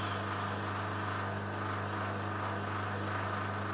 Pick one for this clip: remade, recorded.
recorded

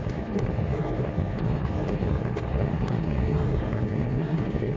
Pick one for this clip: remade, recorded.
remade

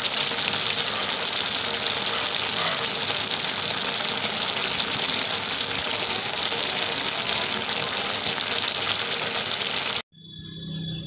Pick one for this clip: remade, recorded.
recorded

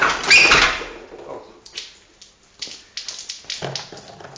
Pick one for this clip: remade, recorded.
recorded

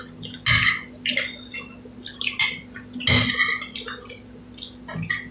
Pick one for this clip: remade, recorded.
recorded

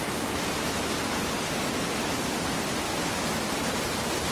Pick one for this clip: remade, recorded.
recorded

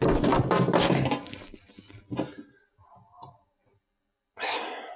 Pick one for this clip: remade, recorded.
recorded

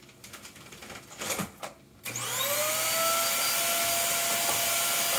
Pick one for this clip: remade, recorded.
recorded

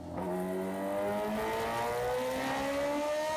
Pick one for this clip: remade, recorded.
recorded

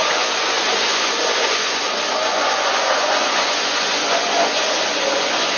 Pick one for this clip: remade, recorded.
remade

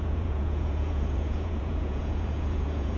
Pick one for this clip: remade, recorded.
remade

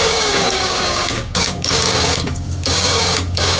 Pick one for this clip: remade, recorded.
remade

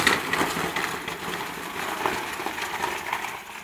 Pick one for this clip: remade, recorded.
recorded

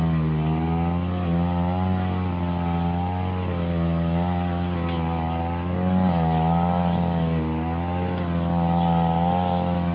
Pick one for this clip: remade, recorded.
recorded